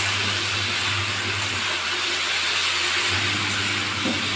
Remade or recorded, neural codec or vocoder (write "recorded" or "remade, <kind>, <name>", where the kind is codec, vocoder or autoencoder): remade, vocoder, BigVGAN v2